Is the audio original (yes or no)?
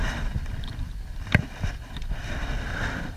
no